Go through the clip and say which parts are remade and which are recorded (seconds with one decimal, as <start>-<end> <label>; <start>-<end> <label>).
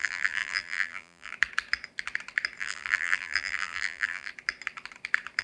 0.0-1.3 remade; 1.3-2.6 recorded; 2.6-4.3 remade; 4.3-5.4 recorded